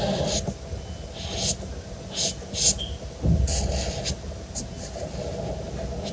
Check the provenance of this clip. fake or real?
real